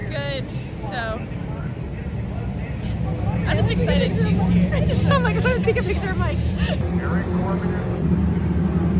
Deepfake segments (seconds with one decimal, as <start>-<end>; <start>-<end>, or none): none